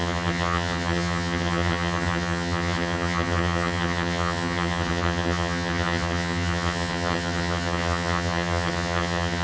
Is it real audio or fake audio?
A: fake